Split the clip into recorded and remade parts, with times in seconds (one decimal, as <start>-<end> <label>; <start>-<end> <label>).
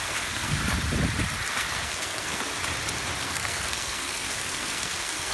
0.0-0.6 remade; 0.6-1.5 recorded; 1.5-2.5 remade; 2.5-3.2 recorded; 3.2-5.3 remade